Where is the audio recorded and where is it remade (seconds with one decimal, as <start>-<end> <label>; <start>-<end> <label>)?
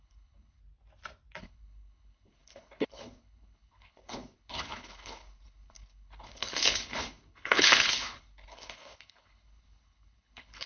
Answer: 0.0-0.6 remade; 0.6-1.4 recorded; 1.4-10.7 remade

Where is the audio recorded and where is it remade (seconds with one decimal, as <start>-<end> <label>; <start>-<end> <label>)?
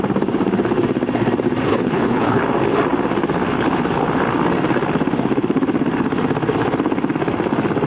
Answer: 0.0-1.7 recorded; 1.7-2.4 remade; 2.4-7.9 recorded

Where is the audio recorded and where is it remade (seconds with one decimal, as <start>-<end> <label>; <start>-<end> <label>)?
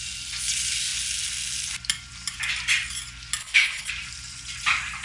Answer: 0.0-3.4 recorded; 3.4-3.9 remade; 3.9-5.0 recorded